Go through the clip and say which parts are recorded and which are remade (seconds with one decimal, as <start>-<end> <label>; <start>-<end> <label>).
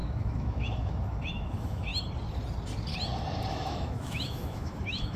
0.0-1.9 remade; 1.9-3.5 recorded; 3.5-5.2 remade